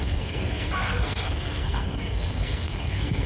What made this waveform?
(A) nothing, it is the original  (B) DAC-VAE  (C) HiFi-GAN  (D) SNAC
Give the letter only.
D